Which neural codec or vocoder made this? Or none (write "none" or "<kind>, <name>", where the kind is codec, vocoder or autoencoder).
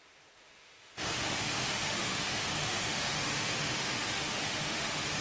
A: autoencoder, DAC-VAE